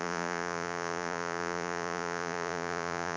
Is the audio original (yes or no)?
no